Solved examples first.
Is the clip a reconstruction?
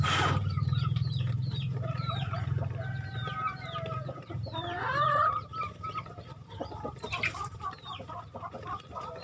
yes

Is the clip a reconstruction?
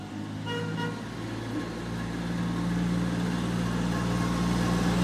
no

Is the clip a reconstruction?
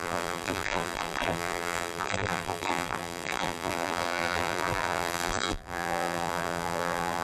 yes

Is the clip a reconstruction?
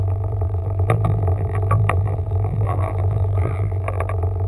yes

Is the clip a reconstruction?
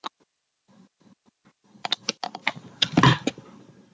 no